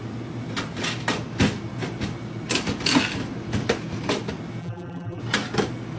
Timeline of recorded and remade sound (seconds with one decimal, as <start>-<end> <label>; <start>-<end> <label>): 0.0-4.6 recorded; 4.6-5.2 remade; 5.2-6.0 recorded